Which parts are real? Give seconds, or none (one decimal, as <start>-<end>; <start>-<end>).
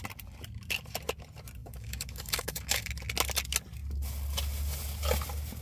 0.0-1.6; 2.9-5.6